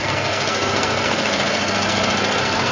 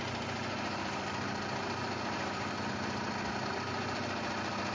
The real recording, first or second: second